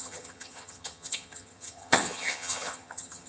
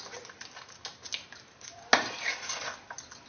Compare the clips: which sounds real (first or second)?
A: second